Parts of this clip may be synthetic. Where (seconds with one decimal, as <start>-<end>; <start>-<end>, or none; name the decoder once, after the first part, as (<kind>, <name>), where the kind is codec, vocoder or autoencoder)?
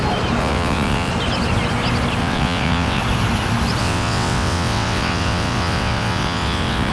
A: 0.4-1.1 (vocoder, WaveNeXt); 2.2-3.0; 3.8-6.9